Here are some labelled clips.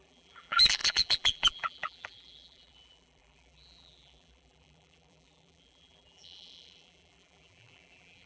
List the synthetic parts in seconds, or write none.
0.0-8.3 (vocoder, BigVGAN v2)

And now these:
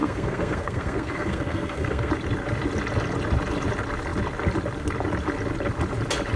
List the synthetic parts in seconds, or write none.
0.0-2.1 (codec, SNAC)